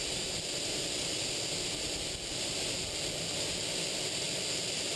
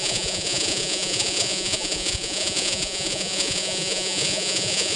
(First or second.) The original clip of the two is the first